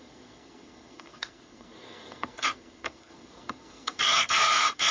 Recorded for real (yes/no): no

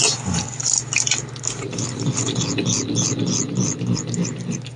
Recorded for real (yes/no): yes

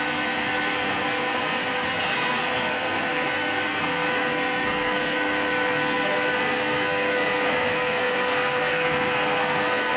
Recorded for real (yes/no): no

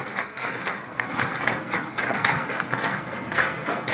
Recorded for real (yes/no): no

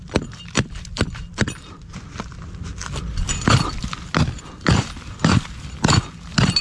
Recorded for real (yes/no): yes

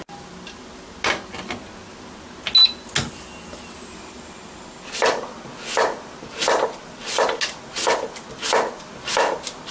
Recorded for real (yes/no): yes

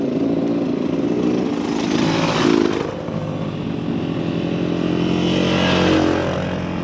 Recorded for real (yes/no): yes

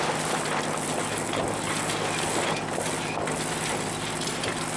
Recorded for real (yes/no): yes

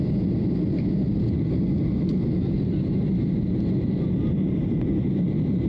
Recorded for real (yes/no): yes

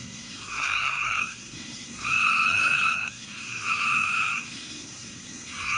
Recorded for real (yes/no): no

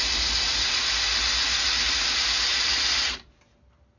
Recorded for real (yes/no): yes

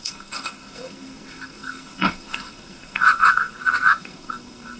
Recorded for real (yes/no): no